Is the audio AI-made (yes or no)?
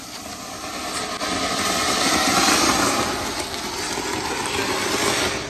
no